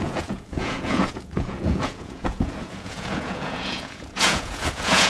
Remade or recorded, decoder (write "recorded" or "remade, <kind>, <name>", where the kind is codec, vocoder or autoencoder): remade, vocoder, Vocos